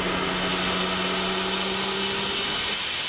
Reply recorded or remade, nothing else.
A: recorded